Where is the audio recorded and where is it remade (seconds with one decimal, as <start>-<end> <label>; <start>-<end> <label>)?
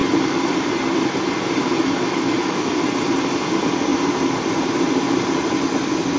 0.0-1.7 recorded; 1.7-2.7 remade; 2.7-6.2 recorded